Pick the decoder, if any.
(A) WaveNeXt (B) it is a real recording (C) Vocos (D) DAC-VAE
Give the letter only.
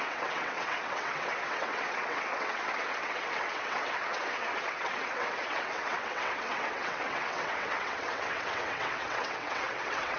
A